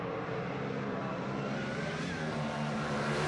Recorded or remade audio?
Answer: remade